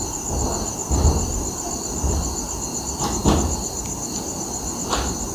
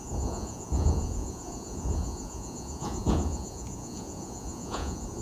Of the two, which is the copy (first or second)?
second